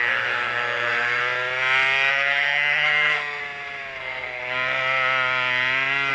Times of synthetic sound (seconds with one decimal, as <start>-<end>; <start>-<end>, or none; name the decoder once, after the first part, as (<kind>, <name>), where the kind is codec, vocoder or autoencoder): 0.0-1.2 (codec, SNAC); 2.1-3.4; 4.0-4.4